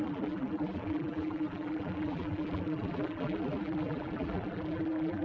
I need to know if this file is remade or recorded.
remade